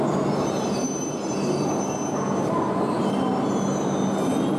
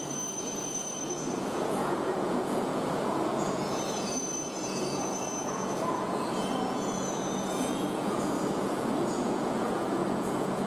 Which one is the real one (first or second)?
first